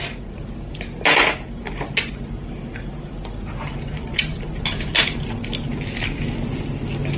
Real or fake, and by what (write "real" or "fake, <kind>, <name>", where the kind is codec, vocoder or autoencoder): real